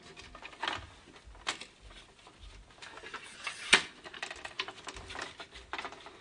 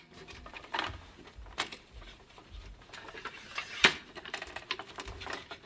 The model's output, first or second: second